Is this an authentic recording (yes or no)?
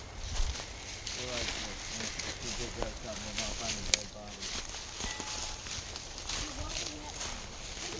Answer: yes